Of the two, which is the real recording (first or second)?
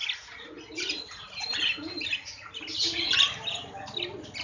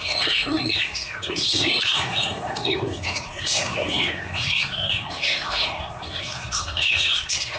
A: first